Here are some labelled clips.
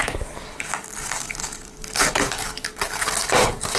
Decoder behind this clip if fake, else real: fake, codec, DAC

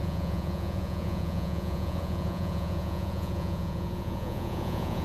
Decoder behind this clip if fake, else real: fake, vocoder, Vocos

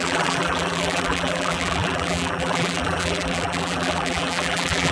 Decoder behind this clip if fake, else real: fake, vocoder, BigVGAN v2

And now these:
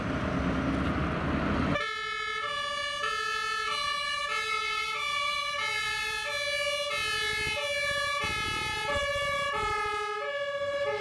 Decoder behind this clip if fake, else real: real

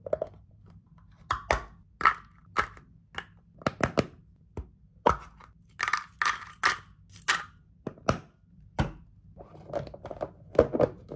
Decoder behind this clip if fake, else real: real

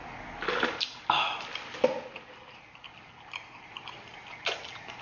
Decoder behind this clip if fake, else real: real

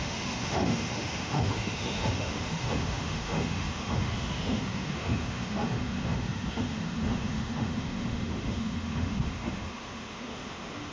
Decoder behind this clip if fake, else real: fake, autoencoder, DAC-VAE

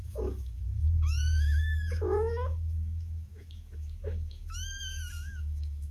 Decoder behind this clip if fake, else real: fake, autoencoder, DAC-VAE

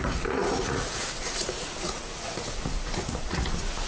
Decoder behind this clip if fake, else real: fake, vocoder, Vocos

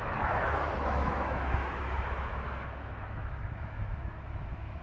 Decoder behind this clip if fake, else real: fake, autoencoder, DAC-VAE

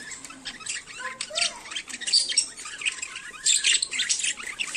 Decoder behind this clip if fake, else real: real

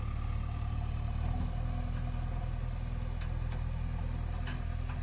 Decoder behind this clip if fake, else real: real